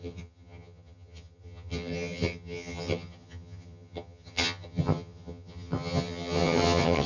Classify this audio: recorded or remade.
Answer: remade